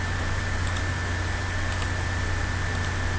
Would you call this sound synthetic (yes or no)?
no